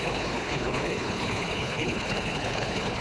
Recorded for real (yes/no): no